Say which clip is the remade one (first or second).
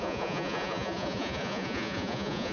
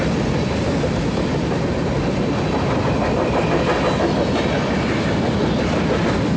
first